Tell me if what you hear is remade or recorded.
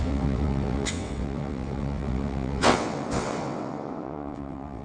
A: remade